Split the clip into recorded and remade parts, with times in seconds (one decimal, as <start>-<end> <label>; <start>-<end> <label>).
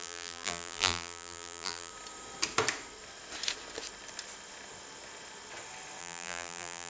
0.0-1.9 remade; 1.9-6.0 recorded; 6.0-6.9 remade